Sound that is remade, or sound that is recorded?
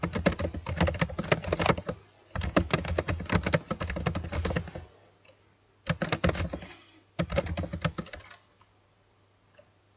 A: recorded